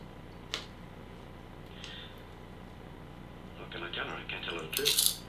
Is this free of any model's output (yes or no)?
yes